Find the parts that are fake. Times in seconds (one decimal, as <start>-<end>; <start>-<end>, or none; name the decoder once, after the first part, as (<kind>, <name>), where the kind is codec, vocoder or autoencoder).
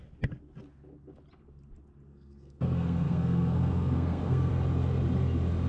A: 2.1-4.5 (codec, SNAC)